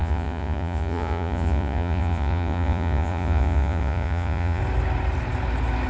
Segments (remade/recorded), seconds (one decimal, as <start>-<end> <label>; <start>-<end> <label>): 0.0-4.6 remade; 4.6-5.9 recorded